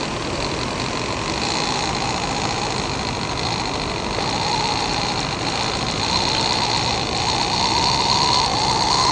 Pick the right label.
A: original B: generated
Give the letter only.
A